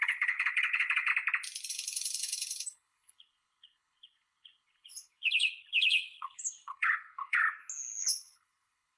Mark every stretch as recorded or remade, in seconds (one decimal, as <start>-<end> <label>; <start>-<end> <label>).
0.0-1.1 remade; 1.1-1.7 recorded; 1.7-7.4 remade; 7.4-8.0 recorded; 8.0-9.0 remade